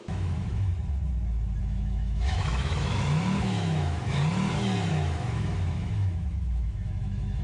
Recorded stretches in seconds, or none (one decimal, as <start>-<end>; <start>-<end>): 0.7-1.6; 4.2-4.9